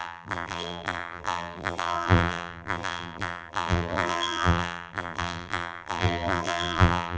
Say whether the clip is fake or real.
fake